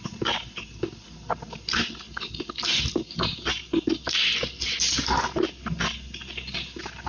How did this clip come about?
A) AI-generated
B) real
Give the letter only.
B